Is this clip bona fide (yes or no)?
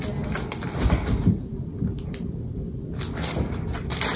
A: no